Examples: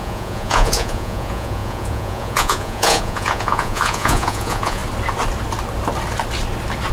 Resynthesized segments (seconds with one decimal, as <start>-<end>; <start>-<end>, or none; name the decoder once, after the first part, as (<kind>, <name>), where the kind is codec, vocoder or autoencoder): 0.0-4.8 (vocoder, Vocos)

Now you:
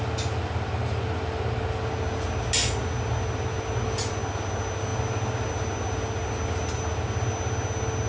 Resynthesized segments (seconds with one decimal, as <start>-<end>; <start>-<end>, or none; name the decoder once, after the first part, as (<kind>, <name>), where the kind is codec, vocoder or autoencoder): none

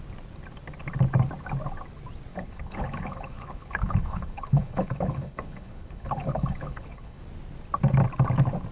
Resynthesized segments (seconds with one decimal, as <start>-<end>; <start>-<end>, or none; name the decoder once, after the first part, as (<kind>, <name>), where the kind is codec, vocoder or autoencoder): 2.3-7.2 (codec, HILCodec)